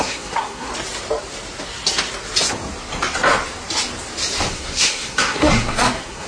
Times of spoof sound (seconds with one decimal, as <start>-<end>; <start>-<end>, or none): 0.0-0.7; 4.5-6.3